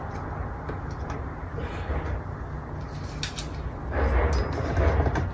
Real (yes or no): yes